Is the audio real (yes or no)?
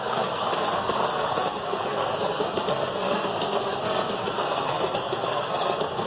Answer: no